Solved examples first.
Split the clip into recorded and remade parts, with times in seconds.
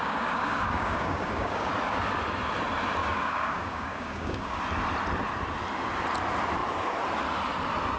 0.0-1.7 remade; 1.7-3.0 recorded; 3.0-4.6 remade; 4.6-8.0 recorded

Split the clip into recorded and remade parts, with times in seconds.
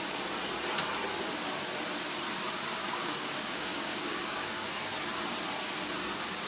0.0-2.8 recorded; 2.8-4.7 remade; 4.7-6.5 recorded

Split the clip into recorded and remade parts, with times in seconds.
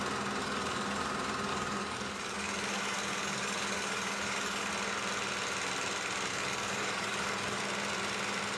0.0-0.4 recorded; 0.4-1.1 remade; 1.1-1.5 recorded; 1.5-4.7 remade; 4.7-6.3 recorded; 6.3-7.6 remade; 7.6-8.6 recorded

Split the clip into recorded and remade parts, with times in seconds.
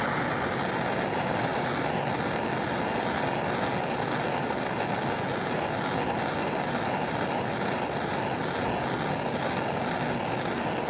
0.0-10.9 recorded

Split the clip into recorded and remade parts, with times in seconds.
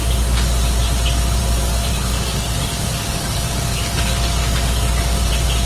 0.0-1.9 recorded; 1.9-5.3 remade; 5.3-5.7 recorded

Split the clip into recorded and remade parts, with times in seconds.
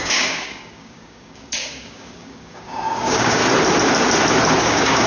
0.0-3.4 remade; 3.4-4.6 recorded; 4.6-5.1 remade